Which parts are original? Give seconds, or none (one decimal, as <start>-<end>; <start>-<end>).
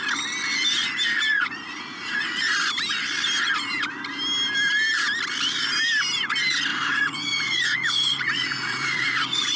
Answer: 0.0-1.3; 2.5-6.7